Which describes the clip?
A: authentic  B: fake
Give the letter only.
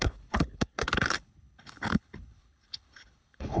B